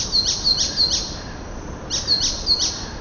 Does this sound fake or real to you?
real